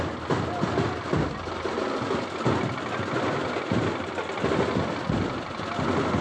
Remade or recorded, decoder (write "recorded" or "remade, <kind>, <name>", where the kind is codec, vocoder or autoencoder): recorded